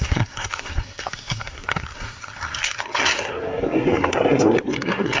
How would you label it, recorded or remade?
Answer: remade